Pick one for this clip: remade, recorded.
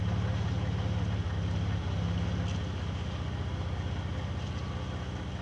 recorded